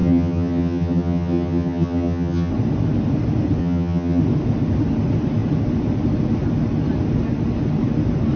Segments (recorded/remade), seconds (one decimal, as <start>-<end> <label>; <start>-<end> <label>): 0.0-2.5 remade; 2.5-3.6 recorded; 3.6-4.2 remade; 4.2-8.4 recorded